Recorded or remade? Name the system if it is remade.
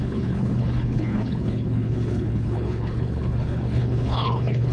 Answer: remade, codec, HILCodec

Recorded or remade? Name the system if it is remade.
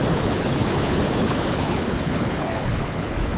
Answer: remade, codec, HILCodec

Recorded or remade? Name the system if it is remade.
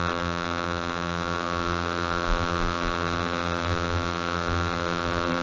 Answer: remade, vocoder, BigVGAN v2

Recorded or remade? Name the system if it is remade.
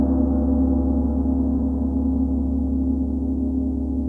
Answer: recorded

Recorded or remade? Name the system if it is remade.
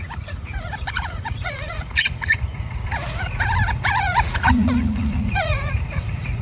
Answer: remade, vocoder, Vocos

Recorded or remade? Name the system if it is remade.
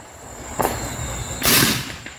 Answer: recorded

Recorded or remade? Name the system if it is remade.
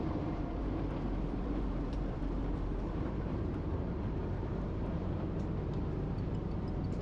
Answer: remade, vocoder, BigVGAN v2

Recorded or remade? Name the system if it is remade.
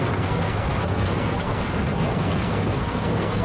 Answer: remade, codec, SNAC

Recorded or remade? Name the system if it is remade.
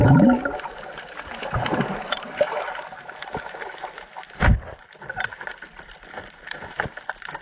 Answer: recorded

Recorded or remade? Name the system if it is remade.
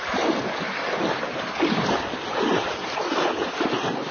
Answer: recorded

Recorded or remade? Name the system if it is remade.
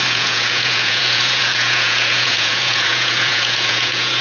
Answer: remade, vocoder, Vocos